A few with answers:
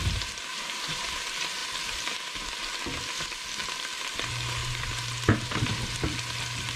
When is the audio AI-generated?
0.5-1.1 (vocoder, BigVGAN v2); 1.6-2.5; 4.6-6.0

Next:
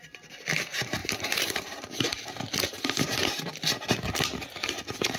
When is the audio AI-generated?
1.0-1.9 (vocoder, BigVGAN v2)

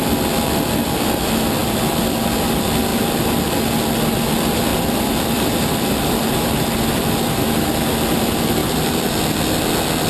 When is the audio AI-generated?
1.6-2.3 (vocoder, BigVGAN v2); 4.7-7.4; 8.6-9.2

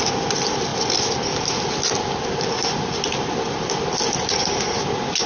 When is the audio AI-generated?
none

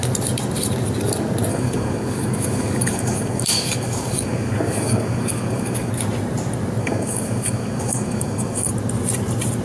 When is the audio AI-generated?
1.5-5.9 (codec, DAC); 6.8-8.7

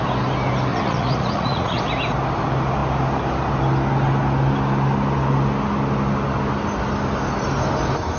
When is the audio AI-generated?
0.7-1.8 (vocoder, Vocos)

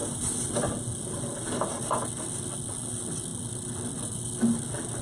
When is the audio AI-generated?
none

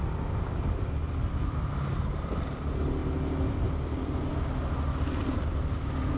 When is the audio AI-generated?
none